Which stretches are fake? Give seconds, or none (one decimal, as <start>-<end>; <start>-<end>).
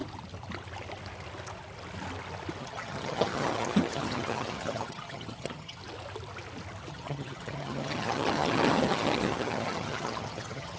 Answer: 2.6-5.8; 6.9-10.8